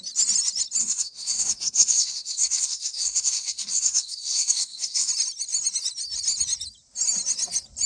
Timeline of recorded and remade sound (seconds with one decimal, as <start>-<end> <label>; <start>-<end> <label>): 0.0-0.8 recorded; 0.8-5.1 remade; 5.1-7.9 recorded